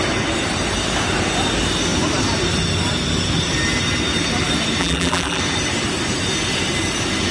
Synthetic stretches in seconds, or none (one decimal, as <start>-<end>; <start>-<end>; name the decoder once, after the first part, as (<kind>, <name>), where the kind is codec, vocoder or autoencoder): 4.8-5.4 (vocoder, BigVGAN v2)